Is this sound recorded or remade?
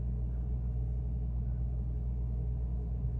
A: recorded